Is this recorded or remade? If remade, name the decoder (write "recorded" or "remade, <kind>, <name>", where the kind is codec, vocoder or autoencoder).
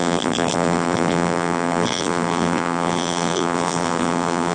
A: remade, vocoder, BigVGAN v2